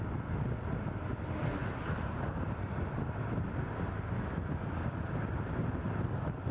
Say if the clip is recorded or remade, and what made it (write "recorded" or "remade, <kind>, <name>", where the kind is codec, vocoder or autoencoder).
recorded